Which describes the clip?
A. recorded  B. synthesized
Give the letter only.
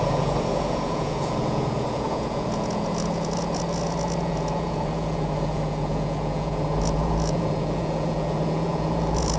B